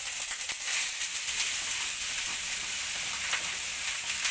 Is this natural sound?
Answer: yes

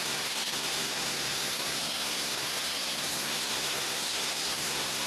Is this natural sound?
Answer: no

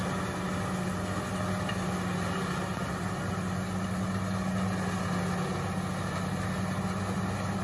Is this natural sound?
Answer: yes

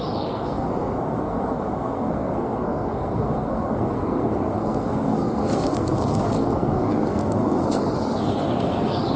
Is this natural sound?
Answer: no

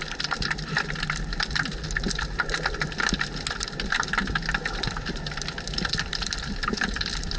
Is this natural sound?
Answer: yes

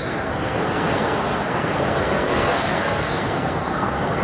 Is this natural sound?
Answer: no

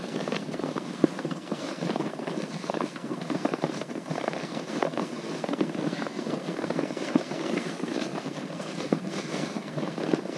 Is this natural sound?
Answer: no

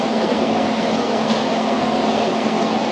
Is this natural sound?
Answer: no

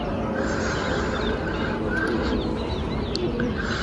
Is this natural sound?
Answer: yes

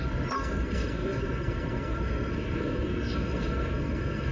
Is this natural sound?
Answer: no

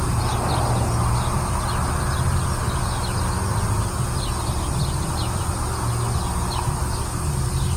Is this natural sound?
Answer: yes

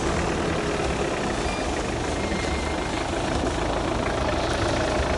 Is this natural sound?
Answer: yes